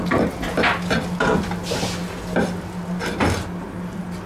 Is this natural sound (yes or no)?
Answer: yes